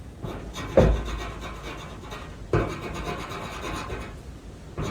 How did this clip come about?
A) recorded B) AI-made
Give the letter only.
A